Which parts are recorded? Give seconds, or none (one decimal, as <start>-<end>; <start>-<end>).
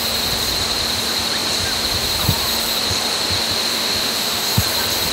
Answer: 0.0-3.7; 4.6-5.1